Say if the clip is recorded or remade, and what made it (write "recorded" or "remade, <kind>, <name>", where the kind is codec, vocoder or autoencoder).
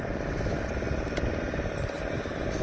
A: recorded